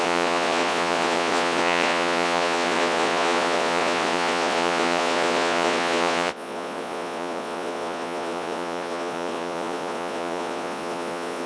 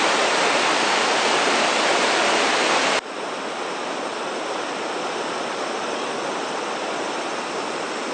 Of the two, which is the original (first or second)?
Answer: second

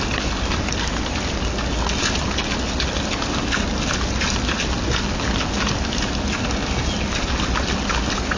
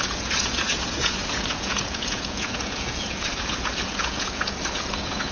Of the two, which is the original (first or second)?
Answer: first